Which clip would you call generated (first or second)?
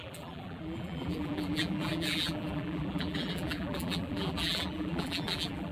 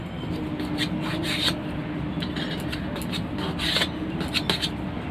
first